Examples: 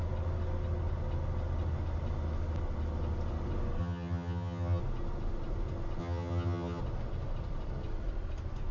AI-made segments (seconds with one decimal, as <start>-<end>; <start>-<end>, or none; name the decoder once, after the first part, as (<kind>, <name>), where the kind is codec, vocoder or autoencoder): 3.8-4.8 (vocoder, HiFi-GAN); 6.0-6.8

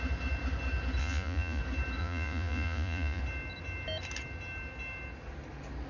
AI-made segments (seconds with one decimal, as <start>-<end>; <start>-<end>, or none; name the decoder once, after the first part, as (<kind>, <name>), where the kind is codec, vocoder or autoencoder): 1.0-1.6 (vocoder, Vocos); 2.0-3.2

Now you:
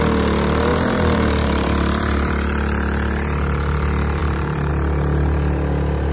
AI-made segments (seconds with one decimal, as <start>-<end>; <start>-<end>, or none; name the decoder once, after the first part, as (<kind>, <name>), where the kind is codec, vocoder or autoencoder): 0.7-2.3 (vocoder, BigVGAN v2); 4.2-4.7

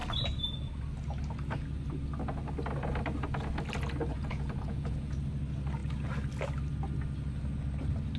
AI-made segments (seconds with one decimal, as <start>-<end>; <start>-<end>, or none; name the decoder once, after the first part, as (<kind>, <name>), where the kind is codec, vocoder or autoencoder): 4.1-5.1 (vocoder, Vocos)

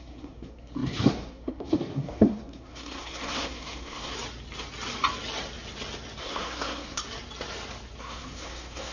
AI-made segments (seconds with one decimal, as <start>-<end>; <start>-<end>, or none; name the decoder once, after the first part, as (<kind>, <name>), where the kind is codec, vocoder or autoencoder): 0.0-4.1 (codec, SNAC); 6.2-7.0; 8.0-8.9